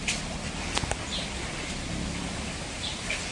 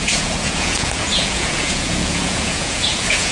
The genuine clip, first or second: first